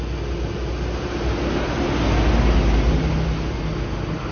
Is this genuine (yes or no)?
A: yes